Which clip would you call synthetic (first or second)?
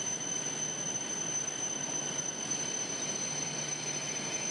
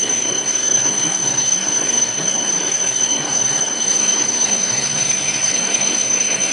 second